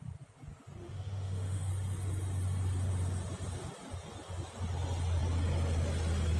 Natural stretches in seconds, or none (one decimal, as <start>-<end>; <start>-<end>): 0.0-0.8; 1.7-6.4